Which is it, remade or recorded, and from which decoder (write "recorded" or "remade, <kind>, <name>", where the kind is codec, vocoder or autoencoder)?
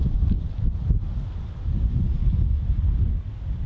recorded